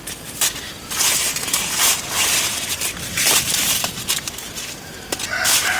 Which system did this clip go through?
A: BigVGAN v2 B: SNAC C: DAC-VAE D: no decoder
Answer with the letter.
D